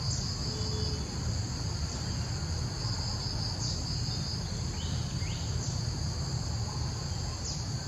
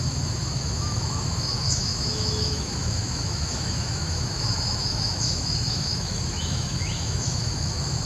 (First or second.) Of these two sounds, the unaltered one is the first